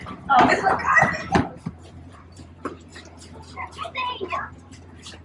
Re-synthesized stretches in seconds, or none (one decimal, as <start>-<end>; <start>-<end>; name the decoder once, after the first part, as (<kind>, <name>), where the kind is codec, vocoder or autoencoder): 0.0-2.9 (vocoder, BigVGAN v2); 3.7-5.2